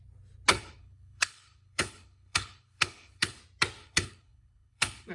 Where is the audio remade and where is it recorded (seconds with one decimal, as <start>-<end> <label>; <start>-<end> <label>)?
0.0-0.5 recorded; 0.5-3.4 remade; 3.4-3.8 recorded; 3.8-5.1 remade